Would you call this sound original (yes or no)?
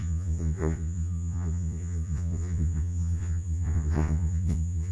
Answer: no